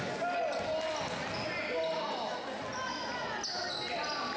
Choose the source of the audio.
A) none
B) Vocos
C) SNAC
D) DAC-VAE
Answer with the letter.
A